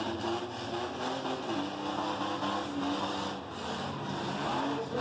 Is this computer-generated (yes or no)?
no